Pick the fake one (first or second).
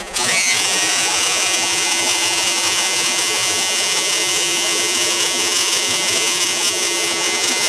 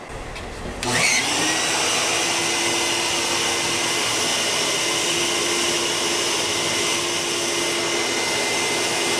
first